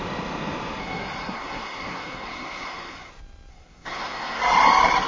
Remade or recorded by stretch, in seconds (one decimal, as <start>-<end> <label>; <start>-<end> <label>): 0.0-0.8 recorded; 0.8-3.1 remade; 3.1-3.5 recorded; 3.5-4.4 remade; 4.4-5.1 recorded